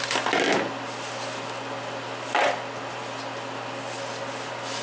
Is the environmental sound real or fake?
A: real